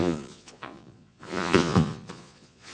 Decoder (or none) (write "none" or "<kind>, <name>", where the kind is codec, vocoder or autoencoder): vocoder, Vocos